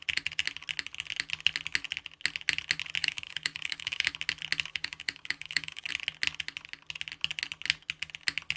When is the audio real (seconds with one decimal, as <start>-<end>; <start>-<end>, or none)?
0.0-3.0; 4.1-4.7; 5.9-8.6